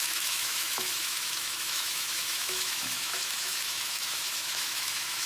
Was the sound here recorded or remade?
remade